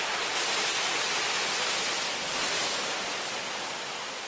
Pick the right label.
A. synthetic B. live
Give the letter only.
B